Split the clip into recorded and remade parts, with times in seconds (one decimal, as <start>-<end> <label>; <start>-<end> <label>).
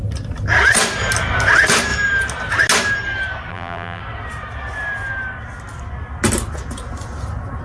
0.0-3.5 recorded; 3.5-4.0 remade; 4.0-7.6 recorded